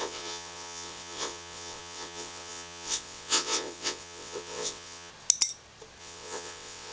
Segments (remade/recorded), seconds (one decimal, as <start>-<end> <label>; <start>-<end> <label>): 0.0-5.1 remade; 5.1-6.0 recorded; 6.0-6.9 remade